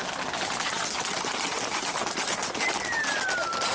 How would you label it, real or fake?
real